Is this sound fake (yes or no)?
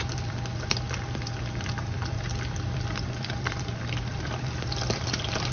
yes